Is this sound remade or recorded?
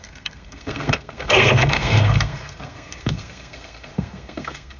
remade